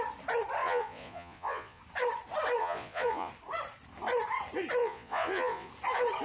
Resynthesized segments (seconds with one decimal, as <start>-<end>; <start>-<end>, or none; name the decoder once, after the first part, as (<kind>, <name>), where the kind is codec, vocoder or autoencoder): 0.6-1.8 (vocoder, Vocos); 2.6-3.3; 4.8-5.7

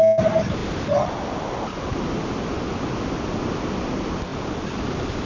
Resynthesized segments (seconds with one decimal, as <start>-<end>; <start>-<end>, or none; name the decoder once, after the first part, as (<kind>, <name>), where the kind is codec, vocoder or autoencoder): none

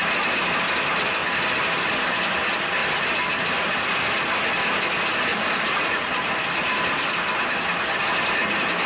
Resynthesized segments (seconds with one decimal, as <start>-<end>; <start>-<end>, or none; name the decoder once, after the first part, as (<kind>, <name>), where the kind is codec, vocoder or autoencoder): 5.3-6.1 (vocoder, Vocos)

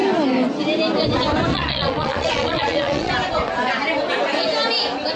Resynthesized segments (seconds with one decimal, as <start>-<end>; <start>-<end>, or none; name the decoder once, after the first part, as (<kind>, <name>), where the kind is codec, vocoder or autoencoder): 1.5-3.1 (vocoder, Vocos)

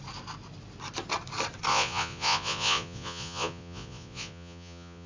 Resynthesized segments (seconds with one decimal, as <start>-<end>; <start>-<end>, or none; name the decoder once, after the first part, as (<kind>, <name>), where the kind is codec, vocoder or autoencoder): 1.7-5.1 (vocoder, Vocos)

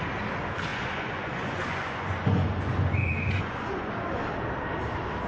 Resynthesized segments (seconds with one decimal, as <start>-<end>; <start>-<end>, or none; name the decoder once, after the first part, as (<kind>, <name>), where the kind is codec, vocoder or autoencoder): 0.7-3.9 (vocoder, Vocos)

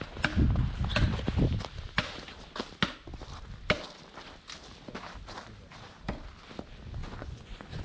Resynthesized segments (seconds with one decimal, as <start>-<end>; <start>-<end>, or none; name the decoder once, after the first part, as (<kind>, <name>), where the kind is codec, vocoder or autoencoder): 7.0-7.8 (vocoder, Vocos)

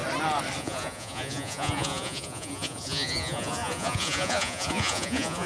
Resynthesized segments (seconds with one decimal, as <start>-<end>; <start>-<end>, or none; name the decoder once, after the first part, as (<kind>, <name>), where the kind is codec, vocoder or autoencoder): 0.6-5.5 (vocoder, Vocos)